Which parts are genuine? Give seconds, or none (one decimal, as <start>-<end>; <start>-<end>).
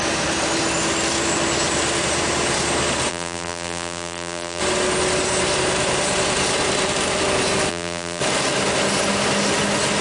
0.0-3.1; 4.6-7.7; 8.2-10.0